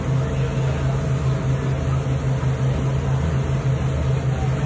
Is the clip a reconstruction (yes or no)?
no